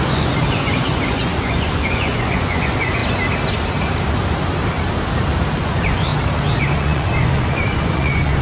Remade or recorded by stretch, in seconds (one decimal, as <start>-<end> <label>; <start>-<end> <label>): 0.0-3.0 remade; 3.0-5.6 recorded; 5.6-6.1 remade; 6.1-6.6 recorded; 6.6-8.4 remade